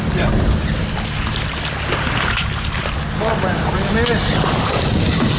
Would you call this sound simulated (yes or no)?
no